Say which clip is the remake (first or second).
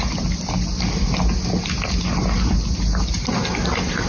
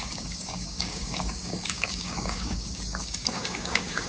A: second